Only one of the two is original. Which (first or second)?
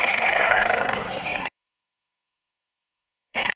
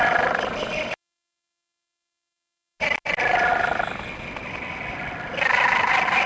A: second